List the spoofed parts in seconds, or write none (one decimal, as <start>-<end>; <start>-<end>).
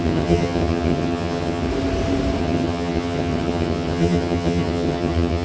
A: 0.0-1.7; 2.4-5.4